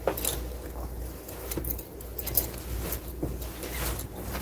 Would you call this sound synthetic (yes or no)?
no